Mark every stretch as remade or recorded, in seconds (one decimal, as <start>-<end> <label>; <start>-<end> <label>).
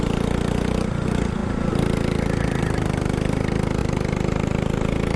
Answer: 0.0-3.8 recorded; 3.8-5.2 remade